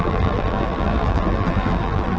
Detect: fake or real fake